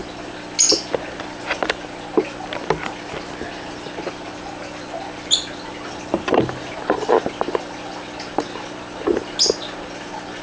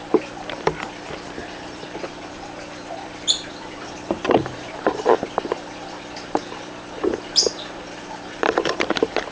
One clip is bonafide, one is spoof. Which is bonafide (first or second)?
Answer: first